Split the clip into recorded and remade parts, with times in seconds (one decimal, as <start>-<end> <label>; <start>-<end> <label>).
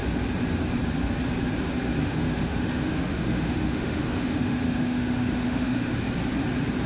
0.0-2.0 recorded; 2.0-5.9 remade; 5.9-6.9 recorded